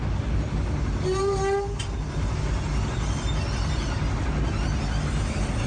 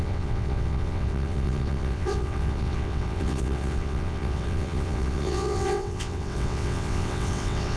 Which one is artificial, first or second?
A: second